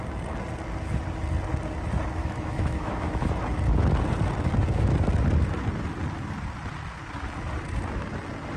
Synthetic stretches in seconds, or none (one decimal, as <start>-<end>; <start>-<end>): 2.2-3.3